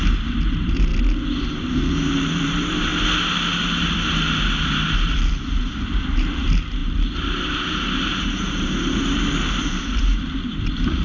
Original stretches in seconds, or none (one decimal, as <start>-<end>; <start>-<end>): 0.9-1.5; 2.9-4.6